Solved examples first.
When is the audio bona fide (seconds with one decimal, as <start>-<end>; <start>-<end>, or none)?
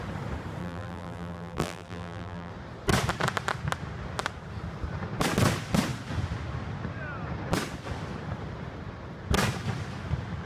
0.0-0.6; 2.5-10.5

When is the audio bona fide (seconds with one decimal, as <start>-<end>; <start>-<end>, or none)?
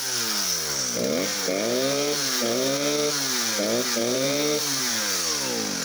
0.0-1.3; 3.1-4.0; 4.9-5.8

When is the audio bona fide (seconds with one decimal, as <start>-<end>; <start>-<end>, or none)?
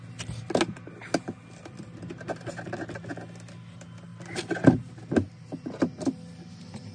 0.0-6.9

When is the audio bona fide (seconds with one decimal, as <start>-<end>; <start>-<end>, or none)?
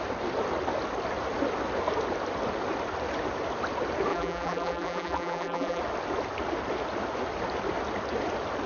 0.0-4.1; 5.8-8.7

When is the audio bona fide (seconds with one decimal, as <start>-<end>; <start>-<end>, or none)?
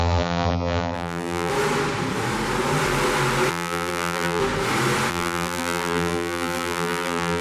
1.5-3.5; 4.4-5.1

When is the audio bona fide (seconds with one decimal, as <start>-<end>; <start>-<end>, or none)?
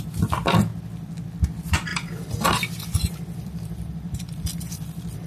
0.0-1.9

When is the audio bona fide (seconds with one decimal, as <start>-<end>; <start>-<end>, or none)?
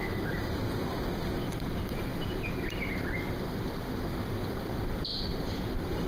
0.6-6.1